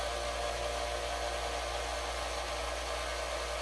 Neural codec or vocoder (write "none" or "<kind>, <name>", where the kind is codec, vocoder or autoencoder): none